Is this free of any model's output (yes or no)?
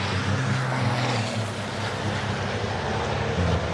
yes